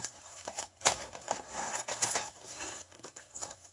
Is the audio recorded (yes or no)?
no